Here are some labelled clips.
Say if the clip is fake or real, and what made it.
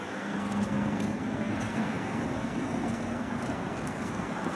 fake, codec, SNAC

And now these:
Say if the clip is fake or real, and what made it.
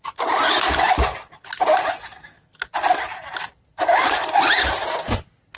real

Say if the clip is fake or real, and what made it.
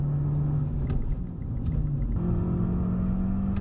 real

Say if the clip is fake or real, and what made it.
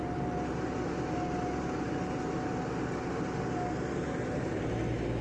real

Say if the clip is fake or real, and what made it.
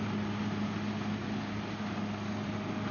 real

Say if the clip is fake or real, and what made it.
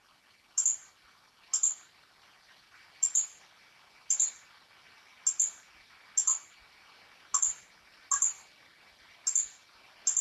real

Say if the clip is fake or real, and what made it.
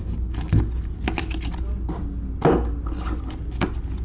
real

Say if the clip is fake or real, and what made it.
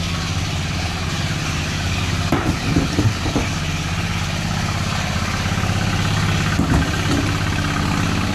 real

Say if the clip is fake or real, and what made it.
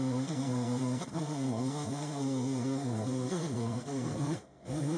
fake, codec, SNAC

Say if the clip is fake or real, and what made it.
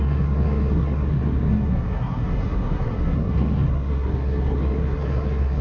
fake, codec, SNAC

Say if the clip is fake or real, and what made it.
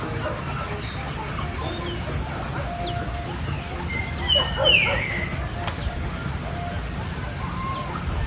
real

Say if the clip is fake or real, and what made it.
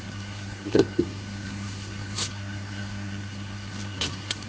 fake, codec, SNAC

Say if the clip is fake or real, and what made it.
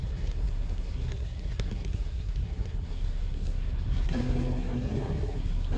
fake, codec, SNAC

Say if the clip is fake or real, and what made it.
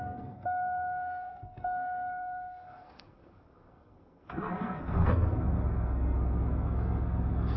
fake, codec, SNAC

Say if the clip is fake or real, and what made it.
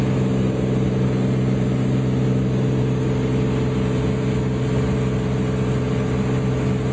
real